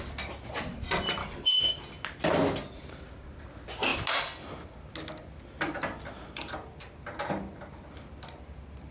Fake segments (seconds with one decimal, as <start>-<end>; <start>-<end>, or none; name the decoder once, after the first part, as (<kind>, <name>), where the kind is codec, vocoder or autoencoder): 1.2-1.8 (codec, DAC)